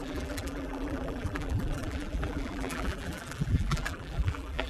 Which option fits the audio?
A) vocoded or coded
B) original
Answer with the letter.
A